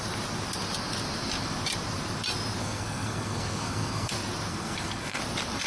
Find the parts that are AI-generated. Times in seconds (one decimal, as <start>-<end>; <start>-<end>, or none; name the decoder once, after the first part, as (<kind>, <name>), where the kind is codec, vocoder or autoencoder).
2.6-4.1 (codec, SNAC); 4.5-5.2